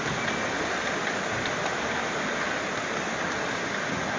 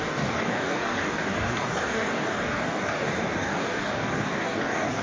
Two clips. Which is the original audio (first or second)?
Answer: first